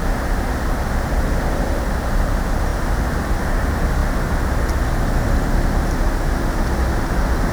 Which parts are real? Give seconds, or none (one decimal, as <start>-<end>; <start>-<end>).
0.0-7.5